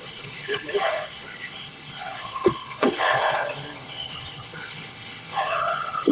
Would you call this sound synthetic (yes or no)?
yes